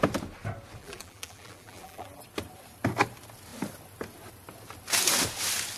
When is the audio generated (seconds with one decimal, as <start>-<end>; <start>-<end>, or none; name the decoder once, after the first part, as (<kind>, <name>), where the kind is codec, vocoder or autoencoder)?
0.8-2.2 (vocoder, BigVGAN v2)